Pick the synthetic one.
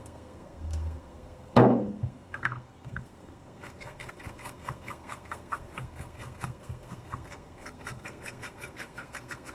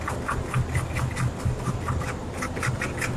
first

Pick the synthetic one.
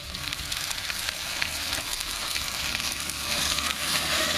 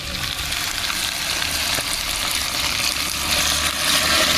first